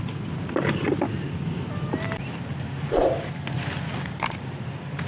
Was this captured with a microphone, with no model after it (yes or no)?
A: no